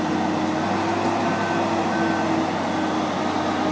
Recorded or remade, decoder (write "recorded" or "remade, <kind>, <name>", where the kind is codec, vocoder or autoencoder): recorded